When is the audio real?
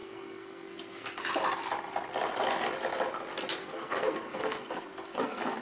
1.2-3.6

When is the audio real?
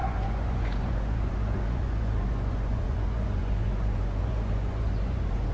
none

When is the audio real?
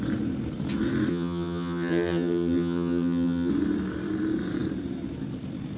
0.0-1.1; 3.5-5.8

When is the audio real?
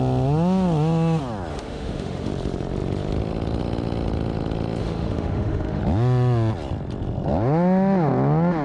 0.0-1.5; 2.3-4.8; 5.8-8.6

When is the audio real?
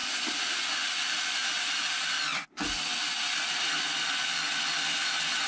0.0-5.5